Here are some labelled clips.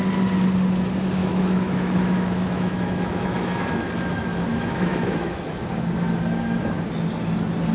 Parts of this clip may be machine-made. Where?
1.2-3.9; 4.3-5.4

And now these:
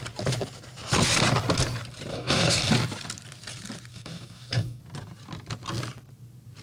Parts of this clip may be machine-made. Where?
2.1-2.7; 3.9-4.8

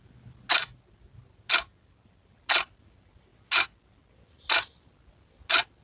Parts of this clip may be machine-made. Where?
none

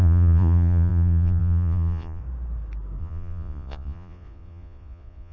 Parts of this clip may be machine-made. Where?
0.0-2.2; 3.0-5.3

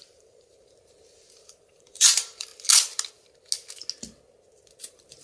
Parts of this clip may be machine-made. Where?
0.0-2.5; 4.8-5.2

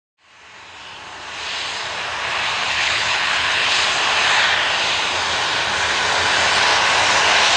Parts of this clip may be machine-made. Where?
2.6-3.8

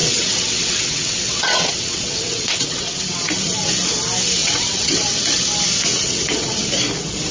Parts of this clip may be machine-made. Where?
0.0-3.7; 4.4-5.2; 5.9-6.7